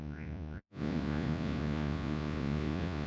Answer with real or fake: fake